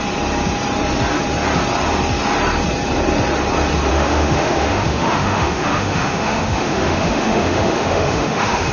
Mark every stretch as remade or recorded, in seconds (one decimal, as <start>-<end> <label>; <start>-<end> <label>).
0.0-3.9 recorded; 3.9-8.7 remade